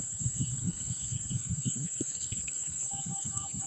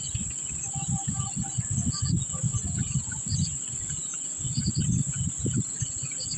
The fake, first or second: first